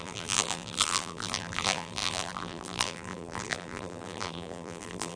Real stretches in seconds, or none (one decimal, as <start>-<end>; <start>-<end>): none